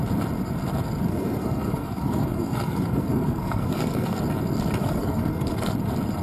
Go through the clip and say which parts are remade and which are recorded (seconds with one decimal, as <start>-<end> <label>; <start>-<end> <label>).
0.0-1.1 recorded; 1.1-4.2 remade; 4.2-4.8 recorded; 4.8-5.7 remade; 5.7-6.2 recorded